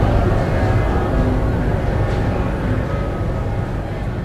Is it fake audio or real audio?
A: real